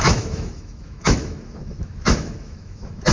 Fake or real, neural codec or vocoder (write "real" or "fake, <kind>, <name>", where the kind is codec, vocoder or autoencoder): fake, autoencoder, DAC-VAE